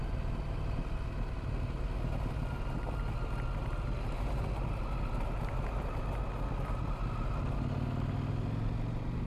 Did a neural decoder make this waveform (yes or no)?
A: no